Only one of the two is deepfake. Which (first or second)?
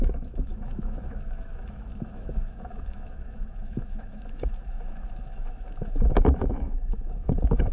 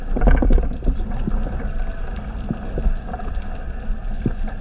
first